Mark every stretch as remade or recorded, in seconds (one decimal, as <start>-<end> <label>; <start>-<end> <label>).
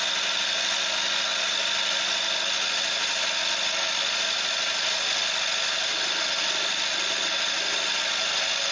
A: 0.0-8.7 recorded